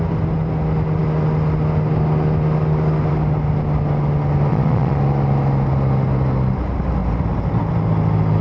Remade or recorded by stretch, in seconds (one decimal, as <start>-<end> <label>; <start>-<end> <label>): 0.0-4.5 recorded; 4.5-5.0 remade; 5.0-8.4 recorded